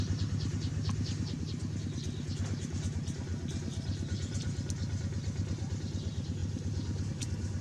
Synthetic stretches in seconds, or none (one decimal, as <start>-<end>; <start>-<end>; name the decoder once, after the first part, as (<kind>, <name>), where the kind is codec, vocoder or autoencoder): 0.0-0.7 (vocoder, BigVGAN v2); 1.4-3.3; 5.7-7.6